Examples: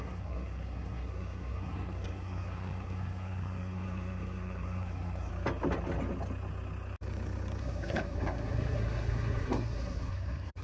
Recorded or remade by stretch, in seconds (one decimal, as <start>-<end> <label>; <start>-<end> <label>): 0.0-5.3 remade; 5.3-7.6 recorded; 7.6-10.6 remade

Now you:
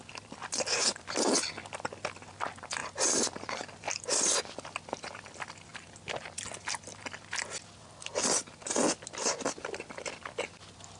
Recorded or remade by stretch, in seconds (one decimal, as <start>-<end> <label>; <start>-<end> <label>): 0.0-11.0 recorded

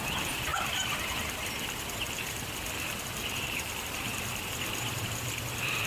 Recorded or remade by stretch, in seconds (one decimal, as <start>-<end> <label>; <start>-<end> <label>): 0.0-5.9 remade

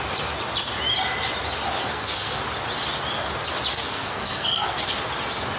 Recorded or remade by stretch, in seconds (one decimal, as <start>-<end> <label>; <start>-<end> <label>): 0.0-1.8 recorded; 1.8-2.4 remade; 2.4-3.7 recorded; 3.7-4.8 remade; 4.8-5.6 recorded

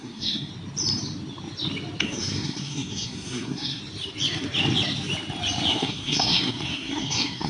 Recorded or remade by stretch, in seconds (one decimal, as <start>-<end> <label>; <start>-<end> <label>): 0.0-0.5 remade; 0.5-2.0 recorded; 2.0-3.8 remade; 3.8-5.7 recorded; 5.7-7.5 remade